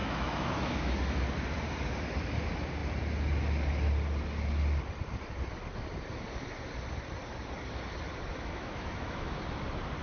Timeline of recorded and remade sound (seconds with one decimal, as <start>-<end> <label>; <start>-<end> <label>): 0.0-0.9 remade; 0.9-8.3 recorded; 8.3-9.4 remade; 9.4-10.0 recorded